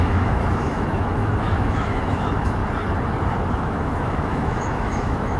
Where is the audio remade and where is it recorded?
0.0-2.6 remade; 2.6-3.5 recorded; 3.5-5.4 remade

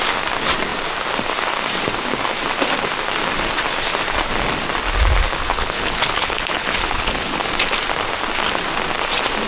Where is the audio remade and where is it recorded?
0.0-5.4 recorded; 5.4-7.4 remade; 7.4-9.5 recorded

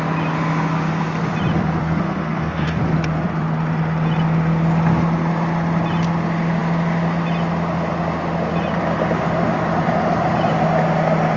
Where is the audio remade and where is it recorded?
0.0-1.8 recorded; 1.8-2.8 remade; 2.8-11.4 recorded

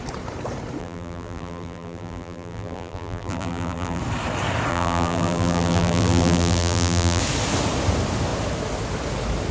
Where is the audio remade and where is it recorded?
0.0-0.8 recorded; 0.8-4.0 remade; 4.0-4.7 recorded; 4.7-7.2 remade; 7.2-9.5 recorded

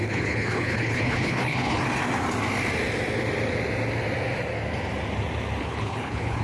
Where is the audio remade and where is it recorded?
0.0-1.8 remade; 1.8-5.6 recorded; 5.6-6.4 remade

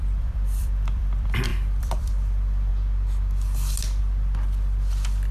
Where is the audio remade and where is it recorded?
0.0-2.7 remade; 2.7-4.0 recorded; 4.0-5.3 remade

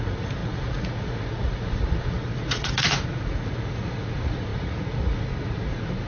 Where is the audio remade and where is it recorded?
0.0-6.1 remade

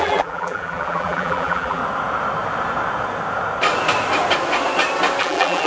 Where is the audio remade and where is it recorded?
0.0-1.8 remade; 1.8-5.2 recorded; 5.2-5.7 remade